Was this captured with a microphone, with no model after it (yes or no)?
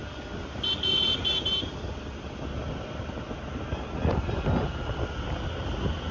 yes